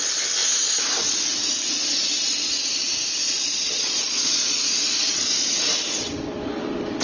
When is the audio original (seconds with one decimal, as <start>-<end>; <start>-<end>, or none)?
0.0-3.2; 5.3-7.0